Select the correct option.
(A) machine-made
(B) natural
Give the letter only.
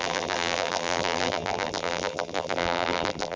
A